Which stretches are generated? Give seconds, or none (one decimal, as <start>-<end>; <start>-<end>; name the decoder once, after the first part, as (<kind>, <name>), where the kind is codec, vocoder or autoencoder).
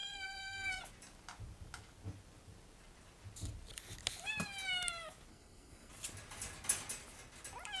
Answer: 0.0-0.8 (codec, SNAC); 5.3-5.9